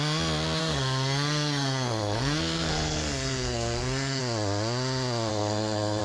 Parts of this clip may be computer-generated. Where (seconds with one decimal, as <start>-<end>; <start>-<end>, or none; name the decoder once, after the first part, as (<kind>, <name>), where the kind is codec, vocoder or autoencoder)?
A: 0.6-4.2 (codec, SNAC); 5.3-6.0